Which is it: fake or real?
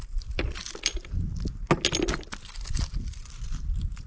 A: real